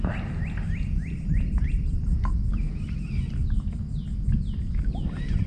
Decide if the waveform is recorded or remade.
recorded